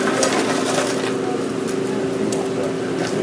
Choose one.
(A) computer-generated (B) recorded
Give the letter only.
B